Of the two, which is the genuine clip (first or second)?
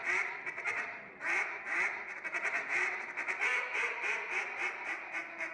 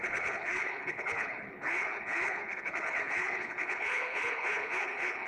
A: first